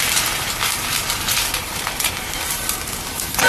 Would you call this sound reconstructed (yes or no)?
yes